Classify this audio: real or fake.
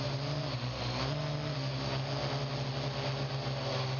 real